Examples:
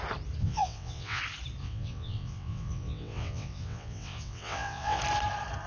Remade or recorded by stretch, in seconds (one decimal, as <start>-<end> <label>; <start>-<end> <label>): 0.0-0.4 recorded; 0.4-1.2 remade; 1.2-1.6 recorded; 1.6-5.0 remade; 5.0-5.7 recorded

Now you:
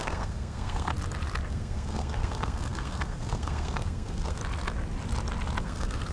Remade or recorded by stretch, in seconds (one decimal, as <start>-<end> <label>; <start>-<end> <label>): 0.0-0.9 remade; 0.9-1.5 recorded; 1.5-4.4 remade; 4.4-5.6 recorded; 5.6-6.1 remade

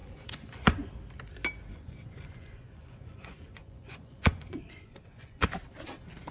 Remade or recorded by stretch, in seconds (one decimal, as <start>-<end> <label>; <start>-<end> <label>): 0.0-0.9 remade; 0.9-1.7 recorded; 1.7-5.5 remade; 5.5-6.3 recorded

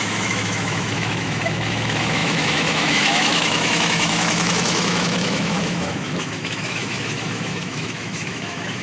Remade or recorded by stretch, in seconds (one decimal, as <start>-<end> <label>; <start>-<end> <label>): 0.0-8.8 remade